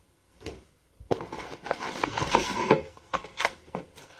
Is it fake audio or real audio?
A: fake